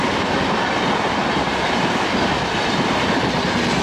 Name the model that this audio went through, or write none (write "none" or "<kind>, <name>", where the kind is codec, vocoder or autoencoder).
none